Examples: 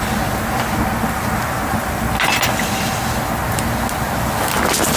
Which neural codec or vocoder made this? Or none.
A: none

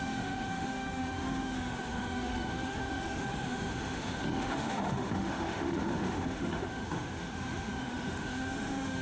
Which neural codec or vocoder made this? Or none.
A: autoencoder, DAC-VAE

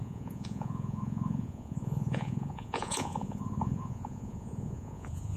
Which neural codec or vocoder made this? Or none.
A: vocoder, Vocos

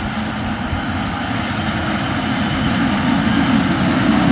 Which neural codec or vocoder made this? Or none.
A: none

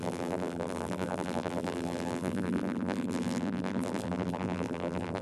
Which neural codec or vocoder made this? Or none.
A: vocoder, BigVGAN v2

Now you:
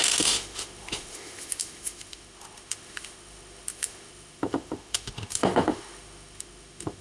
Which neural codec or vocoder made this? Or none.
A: autoencoder, DAC-VAE